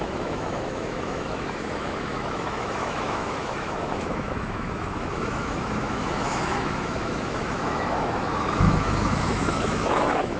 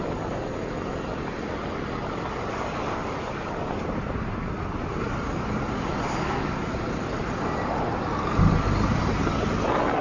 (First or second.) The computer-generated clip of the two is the first